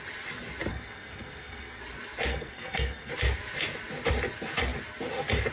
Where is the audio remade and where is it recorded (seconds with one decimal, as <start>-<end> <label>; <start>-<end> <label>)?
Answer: 0.0-0.7 recorded; 0.7-1.8 remade; 1.8-2.3 recorded; 2.3-3.1 remade; 3.1-5.5 recorded